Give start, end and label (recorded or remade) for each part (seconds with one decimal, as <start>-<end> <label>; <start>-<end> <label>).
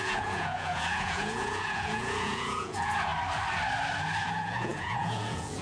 0.0-3.1 remade; 3.1-4.2 recorded; 4.2-5.6 remade